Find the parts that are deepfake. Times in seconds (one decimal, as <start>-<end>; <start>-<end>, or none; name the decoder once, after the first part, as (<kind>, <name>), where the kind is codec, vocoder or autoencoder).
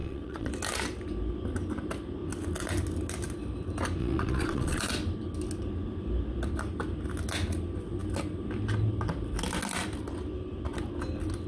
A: 0.0-0.5 (vocoder, Vocos); 4.0-4.8